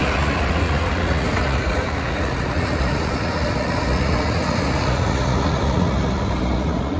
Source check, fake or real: fake